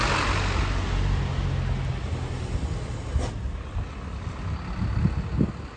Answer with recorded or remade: recorded